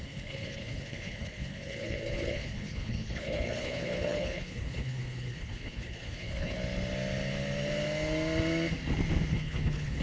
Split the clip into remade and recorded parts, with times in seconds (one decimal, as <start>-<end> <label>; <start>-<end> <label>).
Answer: 0.0-6.6 remade; 6.6-9.3 recorded; 9.3-10.0 remade